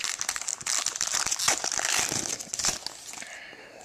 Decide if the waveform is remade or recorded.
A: recorded